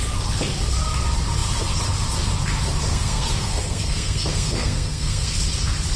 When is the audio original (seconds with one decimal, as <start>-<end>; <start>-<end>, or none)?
0.0-2.9; 5.3-6.0